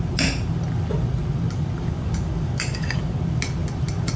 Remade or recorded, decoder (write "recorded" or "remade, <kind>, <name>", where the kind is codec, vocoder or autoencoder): recorded